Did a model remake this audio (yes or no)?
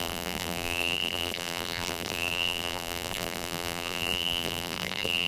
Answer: yes